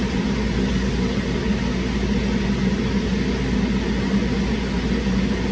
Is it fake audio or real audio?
real